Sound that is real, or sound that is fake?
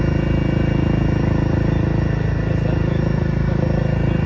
real